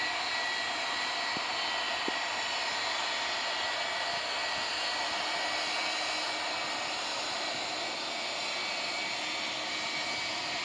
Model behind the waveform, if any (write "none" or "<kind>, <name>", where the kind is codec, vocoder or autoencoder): none